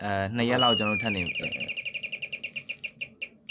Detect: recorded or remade recorded